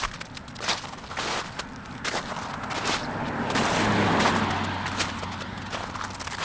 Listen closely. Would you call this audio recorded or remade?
recorded